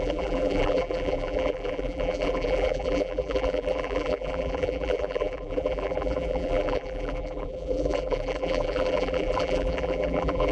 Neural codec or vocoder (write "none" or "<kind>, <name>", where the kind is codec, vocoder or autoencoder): vocoder, BigVGAN v2